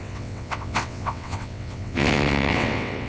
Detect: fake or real fake